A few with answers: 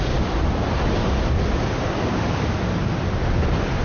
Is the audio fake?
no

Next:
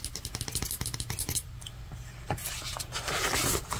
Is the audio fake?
no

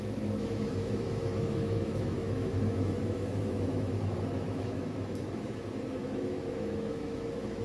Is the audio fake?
yes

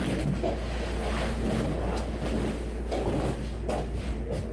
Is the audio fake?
no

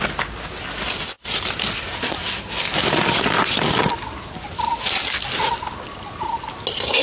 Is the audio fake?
no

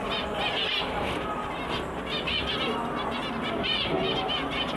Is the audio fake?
no